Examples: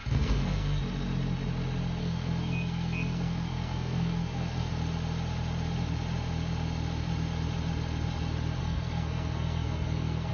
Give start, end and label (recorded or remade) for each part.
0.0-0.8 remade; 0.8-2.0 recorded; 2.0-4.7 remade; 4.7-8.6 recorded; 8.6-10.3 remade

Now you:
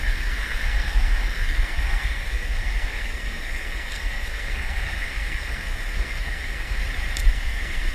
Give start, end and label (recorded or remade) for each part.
0.0-6.8 remade; 6.8-7.3 recorded; 7.3-7.9 remade

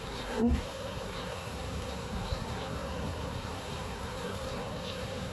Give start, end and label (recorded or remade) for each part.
0.0-5.3 remade

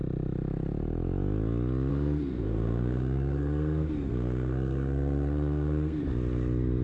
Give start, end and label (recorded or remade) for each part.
0.0-1.9 recorded; 1.9-6.0 remade; 6.0-6.8 recorded

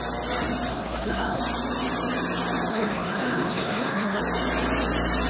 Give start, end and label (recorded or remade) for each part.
0.0-0.7 recorded; 0.7-1.4 remade; 1.4-2.7 recorded; 2.7-4.2 remade; 4.2-5.3 recorded